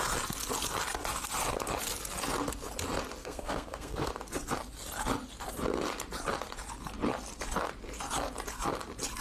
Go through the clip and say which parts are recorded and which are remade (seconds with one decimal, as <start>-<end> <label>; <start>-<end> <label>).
0.0-3.2 recorded; 3.2-4.1 remade; 4.1-9.2 recorded